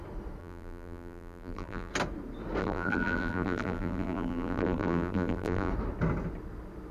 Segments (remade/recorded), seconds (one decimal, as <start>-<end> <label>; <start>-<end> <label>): 0.0-0.4 recorded; 0.4-1.9 remade; 1.9-2.6 recorded; 2.6-5.7 remade; 5.7-6.9 recorded